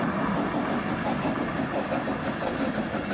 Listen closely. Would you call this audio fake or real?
real